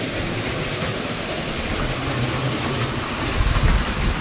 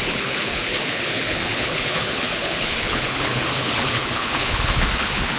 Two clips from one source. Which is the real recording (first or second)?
first